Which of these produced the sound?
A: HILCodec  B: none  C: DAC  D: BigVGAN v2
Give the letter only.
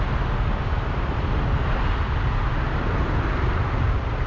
B